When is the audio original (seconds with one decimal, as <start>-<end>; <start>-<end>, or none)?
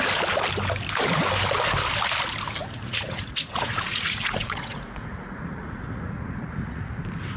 0.0-2.6; 7.0-7.4